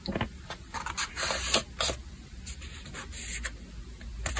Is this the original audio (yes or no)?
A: yes